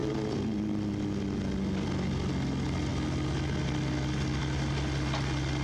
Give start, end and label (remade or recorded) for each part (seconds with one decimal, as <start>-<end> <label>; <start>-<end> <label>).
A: 0.0-5.6 recorded

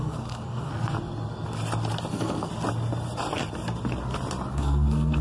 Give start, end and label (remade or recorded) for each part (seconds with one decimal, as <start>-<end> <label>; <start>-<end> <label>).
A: 0.0-0.7 remade; 0.7-2.1 recorded; 2.1-2.5 remade; 2.5-4.5 recorded; 4.5-5.2 remade